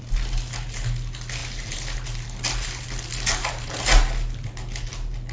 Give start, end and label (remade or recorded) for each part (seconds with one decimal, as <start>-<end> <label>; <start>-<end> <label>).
0.0-5.3 recorded